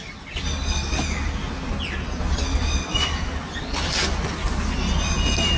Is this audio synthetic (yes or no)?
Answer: no